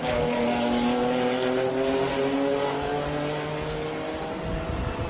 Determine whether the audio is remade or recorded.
recorded